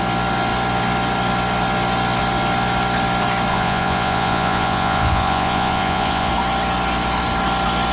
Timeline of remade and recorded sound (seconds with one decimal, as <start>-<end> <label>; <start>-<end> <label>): 0.0-3.5 recorded; 3.5-6.3 remade; 6.3-7.9 recorded